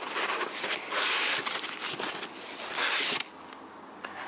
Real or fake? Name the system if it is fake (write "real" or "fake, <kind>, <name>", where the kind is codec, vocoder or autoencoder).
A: real